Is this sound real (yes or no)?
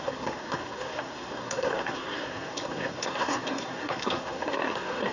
no